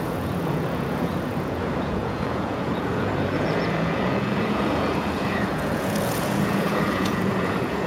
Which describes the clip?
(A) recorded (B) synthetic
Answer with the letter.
B